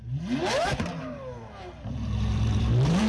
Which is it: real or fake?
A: fake